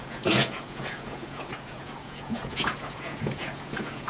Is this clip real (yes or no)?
no